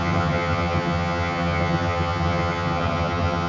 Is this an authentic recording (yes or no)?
no